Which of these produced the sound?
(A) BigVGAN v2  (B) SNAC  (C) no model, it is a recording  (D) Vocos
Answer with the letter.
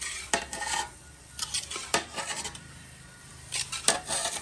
A